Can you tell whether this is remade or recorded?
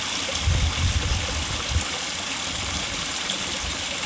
recorded